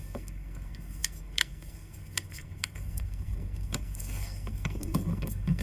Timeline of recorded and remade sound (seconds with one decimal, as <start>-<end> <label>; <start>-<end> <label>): 0.0-5.6 remade